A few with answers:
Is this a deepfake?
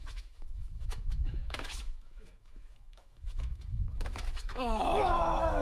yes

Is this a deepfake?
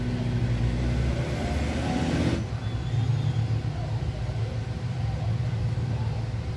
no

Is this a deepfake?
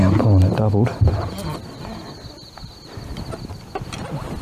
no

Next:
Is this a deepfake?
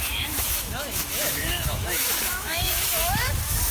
yes